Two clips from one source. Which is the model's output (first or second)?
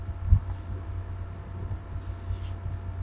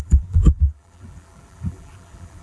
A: second